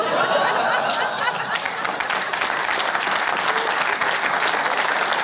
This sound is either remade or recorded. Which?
recorded